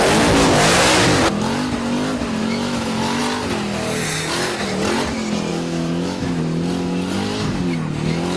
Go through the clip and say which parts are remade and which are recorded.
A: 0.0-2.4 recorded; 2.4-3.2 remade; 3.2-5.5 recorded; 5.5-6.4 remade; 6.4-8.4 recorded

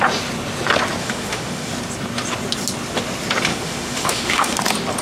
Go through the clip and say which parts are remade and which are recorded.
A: 0.0-1.0 recorded; 1.0-1.7 remade; 1.7-3.5 recorded; 3.5-4.6 remade; 4.6-5.0 recorded

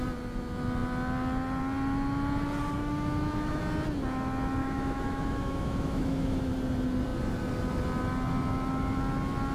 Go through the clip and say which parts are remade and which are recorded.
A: 0.0-2.8 recorded; 2.8-3.6 remade; 3.6-4.6 recorded; 4.6-6.5 remade; 6.5-9.5 recorded

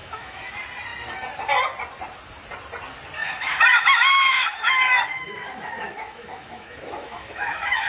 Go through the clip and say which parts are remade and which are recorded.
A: 0.0-0.5 remade; 0.5-3.2 recorded; 3.2-7.9 remade

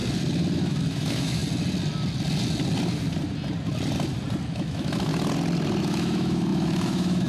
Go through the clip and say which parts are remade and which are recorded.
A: 0.0-0.6 recorded; 0.6-1.4 remade; 1.4-4.5 recorded; 4.5-5.1 remade; 5.1-5.8 recorded; 5.8-7.3 remade

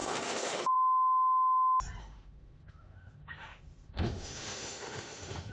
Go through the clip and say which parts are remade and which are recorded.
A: 0.0-0.7 remade; 0.7-2.0 recorded; 2.0-5.5 remade